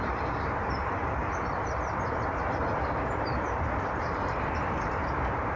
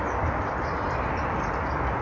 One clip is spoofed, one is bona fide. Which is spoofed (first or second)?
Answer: first